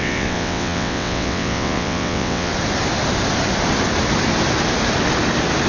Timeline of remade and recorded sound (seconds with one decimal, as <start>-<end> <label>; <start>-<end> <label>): 0.0-2.5 remade; 2.5-5.7 recorded